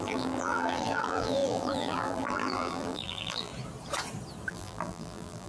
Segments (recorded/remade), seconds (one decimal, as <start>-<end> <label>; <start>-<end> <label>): 0.0-3.5 remade; 3.5-4.5 recorded; 4.5-5.5 remade